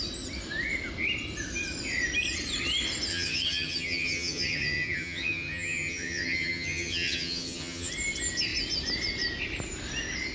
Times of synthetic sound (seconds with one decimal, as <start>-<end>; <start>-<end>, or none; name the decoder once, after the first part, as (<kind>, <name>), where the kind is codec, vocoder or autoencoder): 3.1-7.9 (vocoder, HiFi-GAN)